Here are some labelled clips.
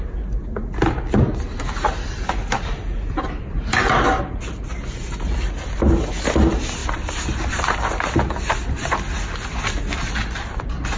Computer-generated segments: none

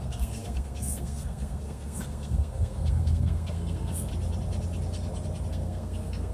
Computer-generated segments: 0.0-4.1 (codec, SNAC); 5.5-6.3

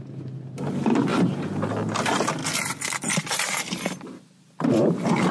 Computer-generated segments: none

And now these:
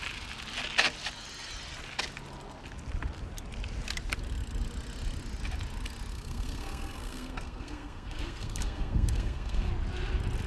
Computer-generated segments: 6.1-9.7 (codec, SNAC)

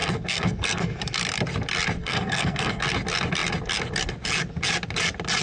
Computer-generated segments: 0.0-1.0 (codec, SNAC); 2.0-2.8

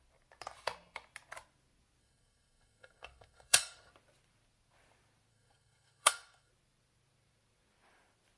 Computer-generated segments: 2.0-3.9 (codec, SNAC); 5.3-6.5